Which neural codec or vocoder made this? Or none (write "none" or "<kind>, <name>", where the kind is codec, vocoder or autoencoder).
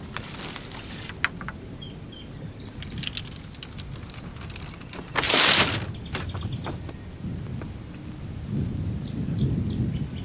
none